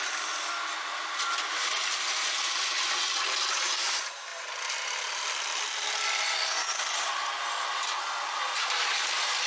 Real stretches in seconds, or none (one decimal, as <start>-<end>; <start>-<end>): 0.0-9.5